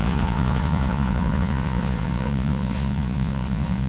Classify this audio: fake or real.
fake